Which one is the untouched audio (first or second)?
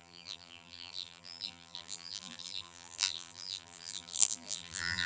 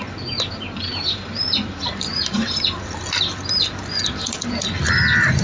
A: second